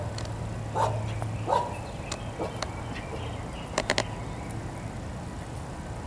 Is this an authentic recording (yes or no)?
yes